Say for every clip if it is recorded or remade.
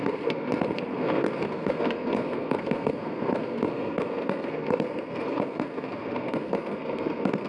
remade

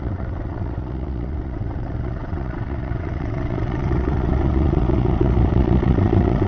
remade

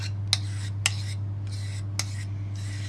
recorded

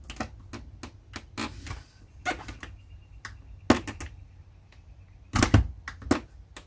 recorded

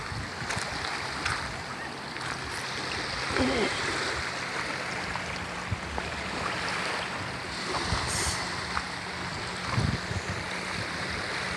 recorded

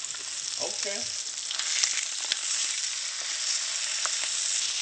recorded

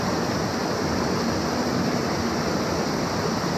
recorded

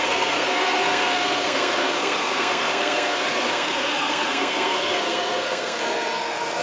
remade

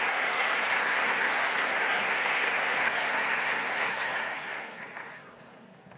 remade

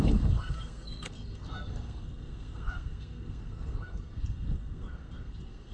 remade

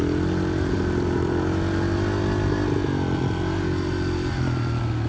recorded